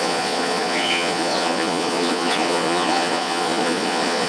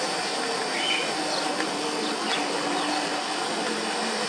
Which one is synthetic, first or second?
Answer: first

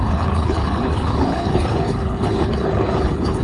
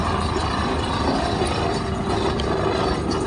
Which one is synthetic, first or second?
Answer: first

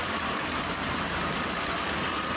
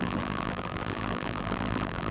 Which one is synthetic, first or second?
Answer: second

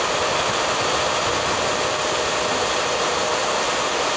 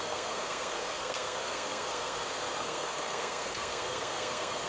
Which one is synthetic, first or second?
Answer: second